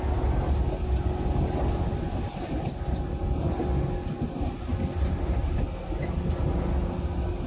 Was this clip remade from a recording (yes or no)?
no